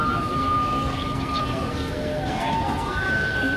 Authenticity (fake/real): fake